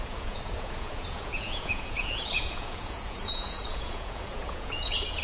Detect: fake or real fake